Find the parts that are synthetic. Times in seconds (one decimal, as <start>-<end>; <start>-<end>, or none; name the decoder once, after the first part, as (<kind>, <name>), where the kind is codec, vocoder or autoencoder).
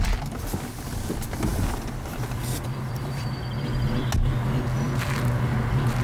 1.5-3.5 (vocoder, BigVGAN v2)